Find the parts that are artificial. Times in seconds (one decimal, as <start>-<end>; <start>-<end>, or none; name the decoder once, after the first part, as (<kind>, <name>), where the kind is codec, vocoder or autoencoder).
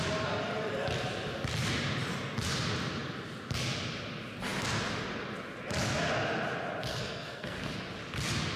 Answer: 6.9-7.7 (codec, SNAC)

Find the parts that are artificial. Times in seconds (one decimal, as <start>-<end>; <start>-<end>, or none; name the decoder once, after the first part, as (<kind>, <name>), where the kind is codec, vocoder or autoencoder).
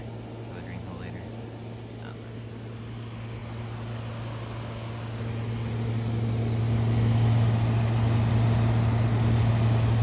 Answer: none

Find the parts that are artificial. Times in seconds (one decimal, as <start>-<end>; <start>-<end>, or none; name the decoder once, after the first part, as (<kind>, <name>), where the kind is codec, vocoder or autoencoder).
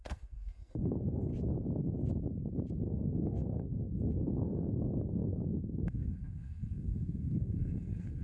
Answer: 0.0-1.3 (codec, SNAC); 2.8-8.2